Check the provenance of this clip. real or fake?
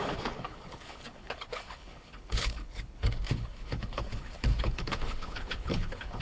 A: fake